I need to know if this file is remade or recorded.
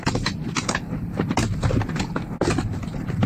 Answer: recorded